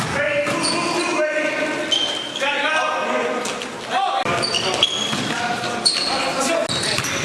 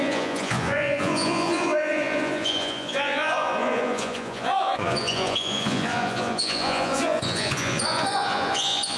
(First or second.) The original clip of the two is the first